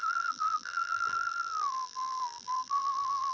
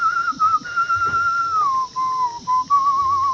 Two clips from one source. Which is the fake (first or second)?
first